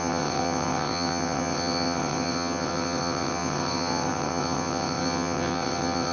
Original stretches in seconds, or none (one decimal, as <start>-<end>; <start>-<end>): none